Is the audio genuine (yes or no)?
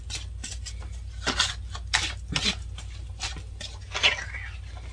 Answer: yes